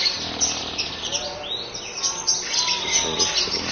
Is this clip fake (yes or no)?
no